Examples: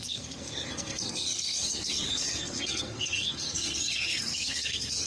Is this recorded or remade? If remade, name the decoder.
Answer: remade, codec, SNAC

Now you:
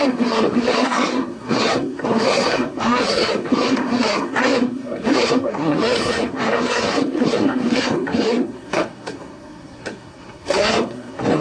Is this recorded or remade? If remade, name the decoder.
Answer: remade, codec, SNAC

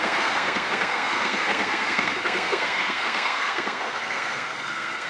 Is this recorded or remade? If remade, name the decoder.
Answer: remade, codec, SNAC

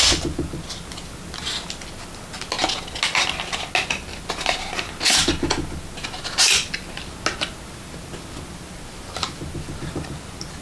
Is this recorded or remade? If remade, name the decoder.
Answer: recorded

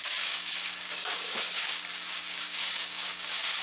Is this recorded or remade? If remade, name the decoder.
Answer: remade, codec, DAC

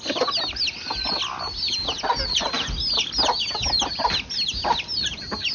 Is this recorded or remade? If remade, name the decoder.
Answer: recorded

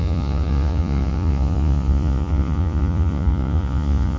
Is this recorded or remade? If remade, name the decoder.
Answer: remade, vocoder, Vocos